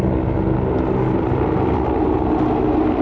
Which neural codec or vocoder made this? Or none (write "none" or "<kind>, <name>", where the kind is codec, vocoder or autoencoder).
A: none